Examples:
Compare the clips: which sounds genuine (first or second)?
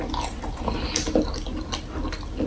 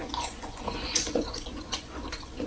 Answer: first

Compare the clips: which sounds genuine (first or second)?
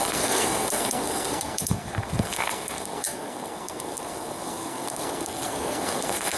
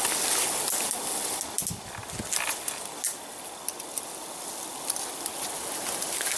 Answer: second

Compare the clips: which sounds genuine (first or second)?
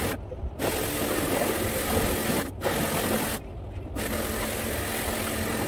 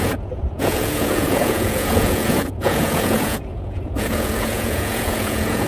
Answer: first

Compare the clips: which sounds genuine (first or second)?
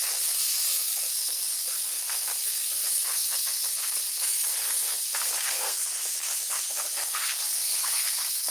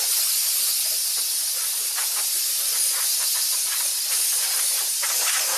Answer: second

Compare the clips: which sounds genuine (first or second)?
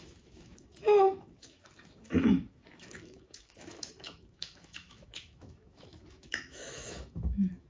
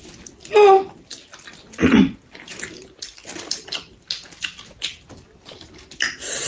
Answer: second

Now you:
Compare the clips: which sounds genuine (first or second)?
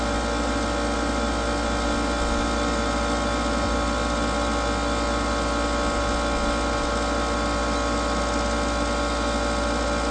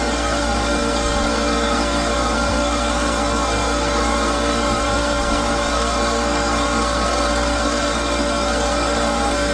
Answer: first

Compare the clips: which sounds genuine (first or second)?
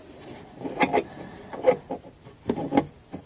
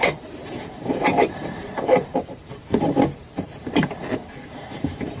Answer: first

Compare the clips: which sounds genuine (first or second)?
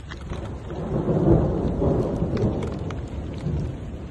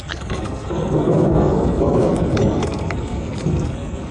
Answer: first